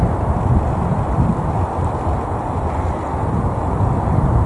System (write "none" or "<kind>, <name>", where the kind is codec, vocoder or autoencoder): none